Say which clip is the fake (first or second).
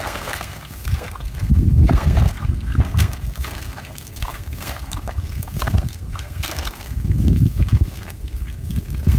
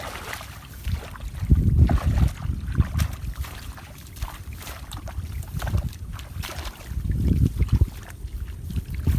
first